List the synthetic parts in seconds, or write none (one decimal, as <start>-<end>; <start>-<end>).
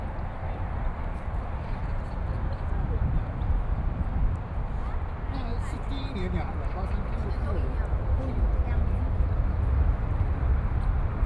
5.5-6.6; 7.8-8.3